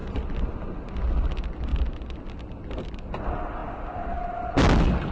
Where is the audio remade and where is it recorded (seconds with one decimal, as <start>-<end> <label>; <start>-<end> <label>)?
0.0-5.1 recorded